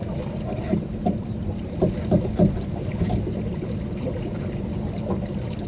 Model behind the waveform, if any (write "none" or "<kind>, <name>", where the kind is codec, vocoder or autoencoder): none